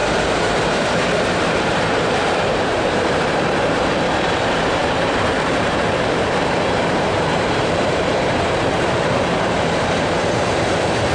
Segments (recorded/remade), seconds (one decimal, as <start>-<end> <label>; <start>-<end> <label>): 0.0-11.1 remade